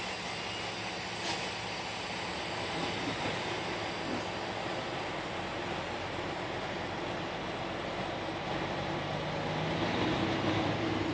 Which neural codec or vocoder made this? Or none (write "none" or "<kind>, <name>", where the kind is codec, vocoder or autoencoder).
none